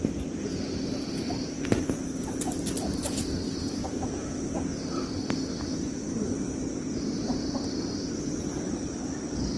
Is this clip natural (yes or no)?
yes